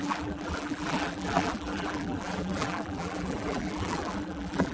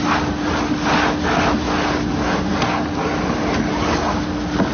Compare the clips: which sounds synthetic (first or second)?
first